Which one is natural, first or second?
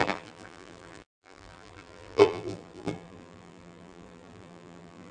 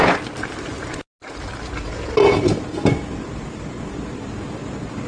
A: second